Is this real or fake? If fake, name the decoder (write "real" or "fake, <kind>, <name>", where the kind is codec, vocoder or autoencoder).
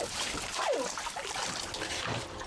real